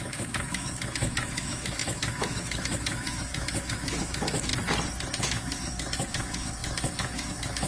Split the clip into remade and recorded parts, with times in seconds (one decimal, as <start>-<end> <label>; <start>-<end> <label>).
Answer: 0.0-4.5 remade; 4.5-5.2 recorded; 5.2-7.7 remade